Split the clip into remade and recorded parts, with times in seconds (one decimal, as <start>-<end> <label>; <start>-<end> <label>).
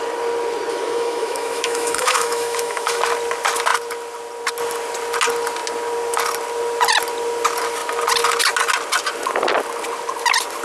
0.0-0.7 recorded; 0.7-3.0 remade; 3.0-10.6 recorded